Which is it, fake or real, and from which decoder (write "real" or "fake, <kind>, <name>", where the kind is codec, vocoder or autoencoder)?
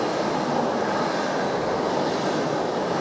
real